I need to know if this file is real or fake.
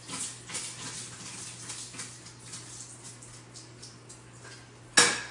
real